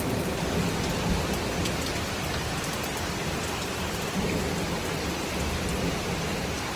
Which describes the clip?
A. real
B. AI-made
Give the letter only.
A